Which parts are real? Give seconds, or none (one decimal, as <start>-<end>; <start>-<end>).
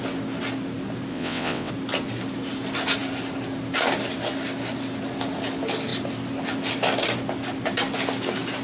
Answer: 0.0-1.1; 1.7-8.6